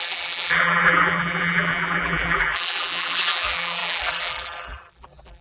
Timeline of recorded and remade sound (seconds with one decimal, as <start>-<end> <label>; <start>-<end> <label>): 0.0-5.4 remade

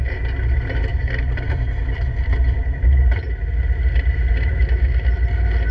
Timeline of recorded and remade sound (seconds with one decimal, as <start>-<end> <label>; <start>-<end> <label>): 0.0-0.9 recorded; 0.9-4.3 remade; 4.3-5.7 recorded

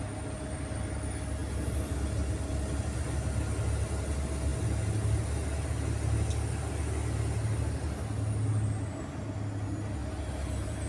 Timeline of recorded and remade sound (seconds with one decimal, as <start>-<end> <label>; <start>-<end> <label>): 0.0-10.0 recorded; 10.0-10.9 remade

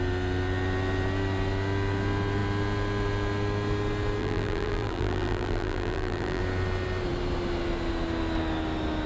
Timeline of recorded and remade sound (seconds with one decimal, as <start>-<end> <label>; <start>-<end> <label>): 0.0-4.2 recorded; 4.2-6.4 remade; 6.4-9.1 recorded

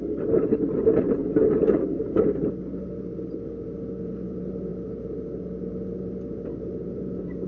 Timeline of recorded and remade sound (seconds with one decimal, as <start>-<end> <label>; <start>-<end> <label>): 0.0-1.2 recorded; 1.2-2.2 remade; 2.2-7.5 recorded